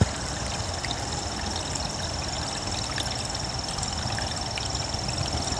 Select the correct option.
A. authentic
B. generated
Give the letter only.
A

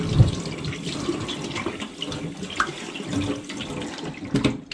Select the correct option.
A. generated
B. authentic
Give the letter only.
B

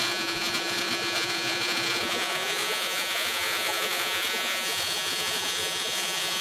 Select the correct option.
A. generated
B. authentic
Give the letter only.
A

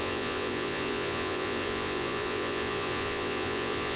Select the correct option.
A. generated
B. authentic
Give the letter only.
A